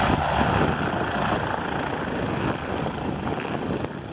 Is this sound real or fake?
real